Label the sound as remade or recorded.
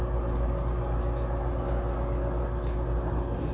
recorded